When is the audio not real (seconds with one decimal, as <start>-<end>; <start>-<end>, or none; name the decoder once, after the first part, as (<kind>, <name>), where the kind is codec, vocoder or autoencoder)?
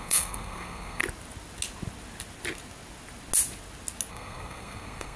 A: 0.0-1.0 (codec, SNAC); 4.1-5.2